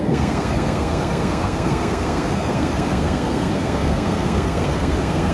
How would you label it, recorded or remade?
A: remade